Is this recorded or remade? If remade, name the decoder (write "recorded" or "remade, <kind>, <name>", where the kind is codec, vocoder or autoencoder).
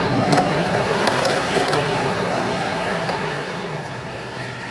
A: remade, codec, SNAC